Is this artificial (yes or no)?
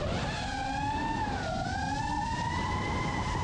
yes